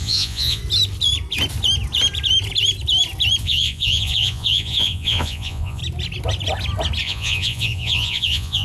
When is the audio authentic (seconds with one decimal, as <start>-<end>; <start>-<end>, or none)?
0.6-3.4; 5.8-7.0

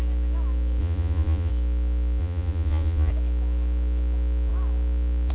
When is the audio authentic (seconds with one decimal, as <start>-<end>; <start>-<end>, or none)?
0.0-0.8; 1.5-2.2; 3.1-5.3

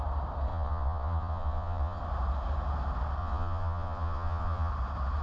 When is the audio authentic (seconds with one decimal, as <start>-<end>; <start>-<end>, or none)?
0.0-0.5; 2.0-3.2; 4.7-5.2

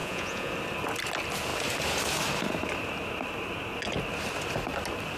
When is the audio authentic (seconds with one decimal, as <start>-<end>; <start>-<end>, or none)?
0.5-5.2

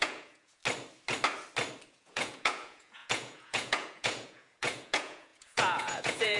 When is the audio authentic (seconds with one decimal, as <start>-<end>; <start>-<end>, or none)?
0.6-1.9

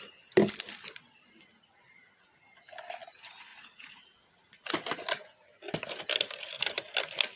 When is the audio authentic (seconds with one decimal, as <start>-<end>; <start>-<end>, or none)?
0.0-3.5; 4.7-7.4